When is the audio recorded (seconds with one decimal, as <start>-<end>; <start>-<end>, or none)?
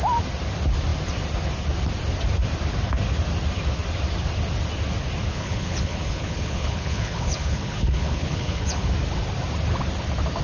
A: 0.0-5.3; 8.9-10.4